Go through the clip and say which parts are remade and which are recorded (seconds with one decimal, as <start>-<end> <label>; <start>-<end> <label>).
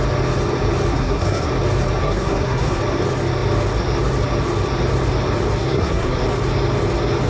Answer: 0.0-0.9 recorded; 0.9-1.5 remade; 1.5-2.0 recorded; 2.0-2.8 remade; 2.8-5.6 recorded; 5.6-6.2 remade; 6.2-7.3 recorded